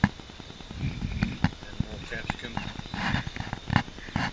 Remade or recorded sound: recorded